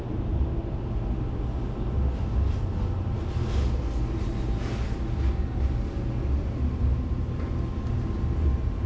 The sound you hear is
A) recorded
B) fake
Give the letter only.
A